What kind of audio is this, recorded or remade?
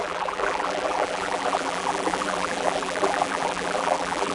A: remade